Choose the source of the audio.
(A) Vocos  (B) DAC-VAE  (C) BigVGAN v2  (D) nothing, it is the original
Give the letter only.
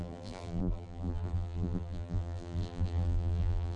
C